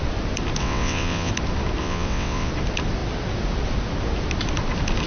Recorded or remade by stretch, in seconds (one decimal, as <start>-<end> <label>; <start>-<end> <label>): 0.0-0.6 recorded; 0.6-1.3 remade; 1.3-1.8 recorded; 1.8-2.5 remade; 2.5-5.1 recorded